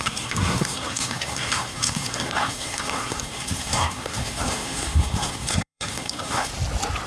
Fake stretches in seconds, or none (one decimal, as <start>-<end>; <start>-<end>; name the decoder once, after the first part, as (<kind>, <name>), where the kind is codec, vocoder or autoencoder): 0.0-6.5 (codec, SNAC)